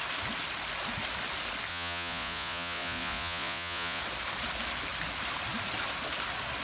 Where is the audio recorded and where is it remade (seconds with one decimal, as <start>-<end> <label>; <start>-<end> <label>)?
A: 0.0-1.7 recorded; 1.7-4.0 remade; 4.0-6.6 recorded